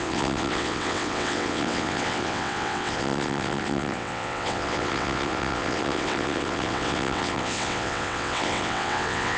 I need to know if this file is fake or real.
fake